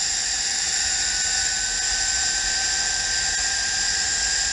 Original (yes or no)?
yes